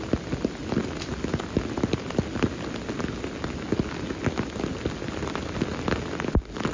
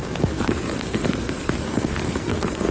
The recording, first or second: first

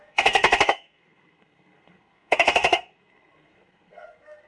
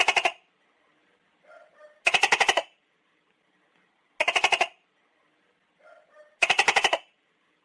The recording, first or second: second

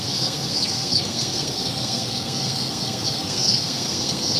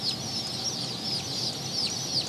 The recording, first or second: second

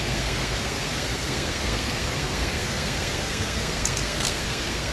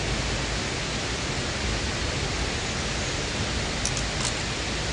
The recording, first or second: second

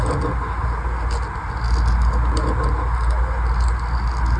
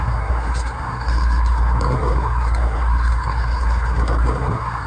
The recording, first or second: first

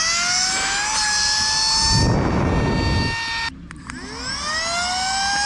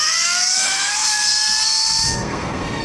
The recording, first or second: first